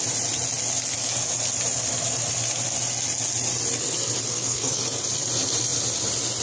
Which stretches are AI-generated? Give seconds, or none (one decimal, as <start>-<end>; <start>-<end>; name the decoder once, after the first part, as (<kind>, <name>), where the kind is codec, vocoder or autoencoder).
4.3-4.8 (codec, SNAC)